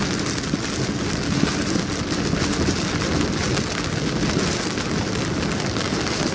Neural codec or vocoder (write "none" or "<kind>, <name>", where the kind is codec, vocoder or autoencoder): none